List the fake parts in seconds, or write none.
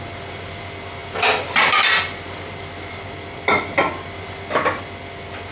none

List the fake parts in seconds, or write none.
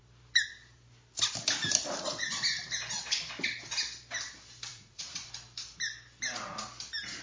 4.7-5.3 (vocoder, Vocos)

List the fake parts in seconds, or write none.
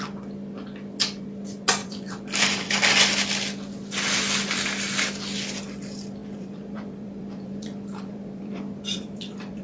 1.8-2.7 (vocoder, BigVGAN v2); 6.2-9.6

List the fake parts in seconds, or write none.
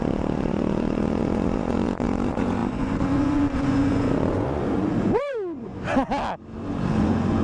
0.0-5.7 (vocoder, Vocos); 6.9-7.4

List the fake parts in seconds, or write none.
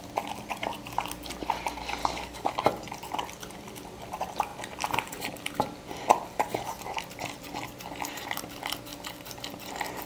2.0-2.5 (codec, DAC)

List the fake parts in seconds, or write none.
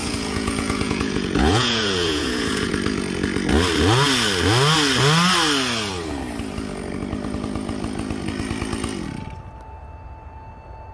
0.0-2.7 (vocoder, Vocos)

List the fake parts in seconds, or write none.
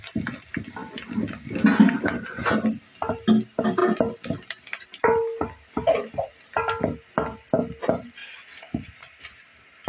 8.2-8.9 (vocoder, Vocos)